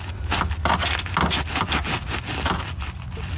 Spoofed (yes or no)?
no